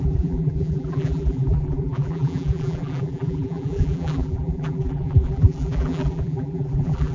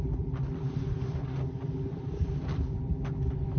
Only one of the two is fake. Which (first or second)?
first